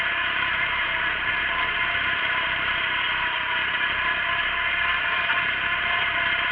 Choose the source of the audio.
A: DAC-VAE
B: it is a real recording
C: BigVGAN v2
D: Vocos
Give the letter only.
C